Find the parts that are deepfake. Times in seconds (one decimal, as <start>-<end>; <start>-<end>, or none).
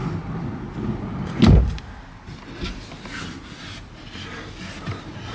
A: none